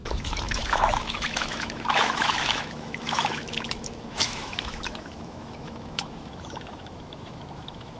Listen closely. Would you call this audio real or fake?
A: fake